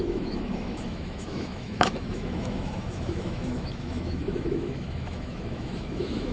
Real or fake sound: fake